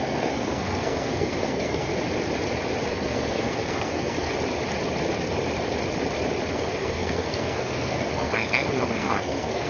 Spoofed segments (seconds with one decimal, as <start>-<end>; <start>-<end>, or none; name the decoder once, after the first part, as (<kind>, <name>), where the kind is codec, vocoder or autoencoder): 0.0-1.9 (codec, SNAC); 2.9-4.3; 6.5-9.7